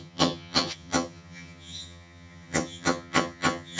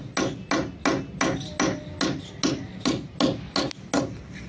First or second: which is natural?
second